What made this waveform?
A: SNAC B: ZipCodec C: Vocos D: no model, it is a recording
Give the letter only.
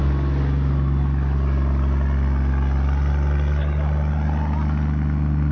D